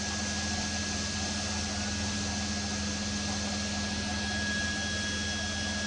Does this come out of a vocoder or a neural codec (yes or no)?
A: no